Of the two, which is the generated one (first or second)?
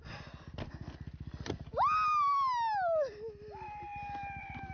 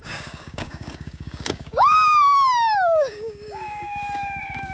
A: second